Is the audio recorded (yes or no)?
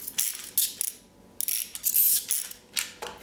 yes